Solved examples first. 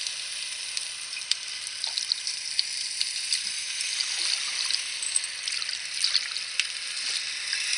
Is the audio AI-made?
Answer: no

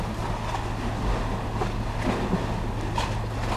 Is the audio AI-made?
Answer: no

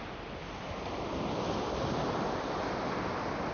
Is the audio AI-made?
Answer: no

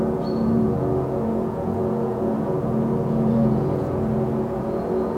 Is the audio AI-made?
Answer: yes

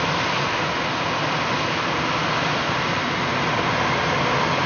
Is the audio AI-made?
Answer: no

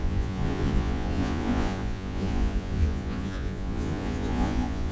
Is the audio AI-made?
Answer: yes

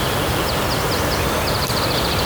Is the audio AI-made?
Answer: no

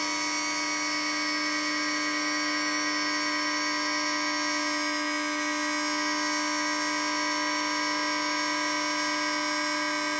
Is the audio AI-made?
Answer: no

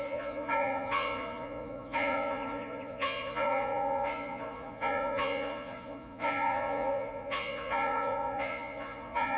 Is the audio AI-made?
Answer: yes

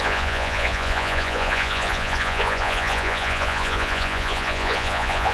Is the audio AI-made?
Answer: yes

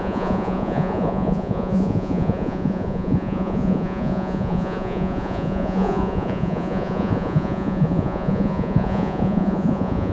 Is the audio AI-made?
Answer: yes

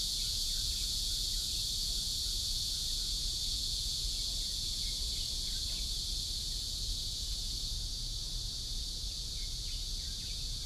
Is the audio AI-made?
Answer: yes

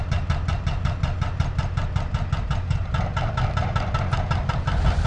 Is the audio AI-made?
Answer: no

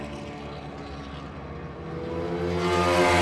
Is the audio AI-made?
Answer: no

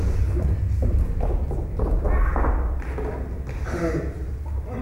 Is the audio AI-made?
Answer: no